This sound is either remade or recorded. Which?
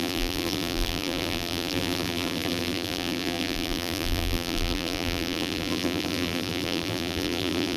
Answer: remade